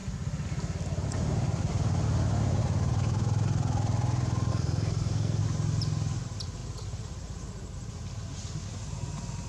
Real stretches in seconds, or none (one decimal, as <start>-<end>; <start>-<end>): 0.0-4.5; 5.4-9.5